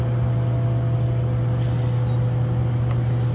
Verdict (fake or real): real